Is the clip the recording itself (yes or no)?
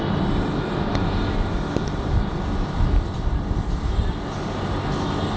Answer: yes